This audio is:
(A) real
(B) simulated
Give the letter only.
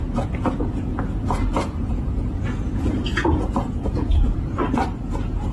B